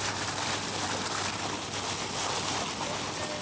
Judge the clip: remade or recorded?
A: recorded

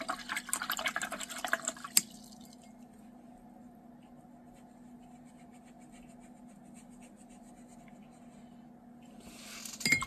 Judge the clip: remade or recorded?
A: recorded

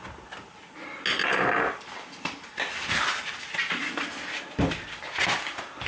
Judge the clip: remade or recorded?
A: recorded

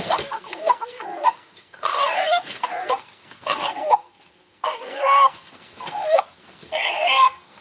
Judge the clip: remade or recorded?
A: remade